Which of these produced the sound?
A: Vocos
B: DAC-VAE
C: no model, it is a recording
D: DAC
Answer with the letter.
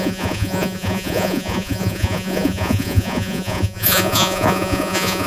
A